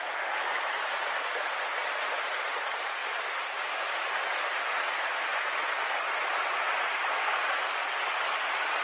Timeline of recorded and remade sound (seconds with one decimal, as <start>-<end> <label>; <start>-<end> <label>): 0.0-1.8 remade; 1.8-2.5 recorded; 2.5-3.0 remade; 3.0-3.7 recorded; 3.7-5.3 remade; 5.3-8.2 recorded; 8.2-8.8 remade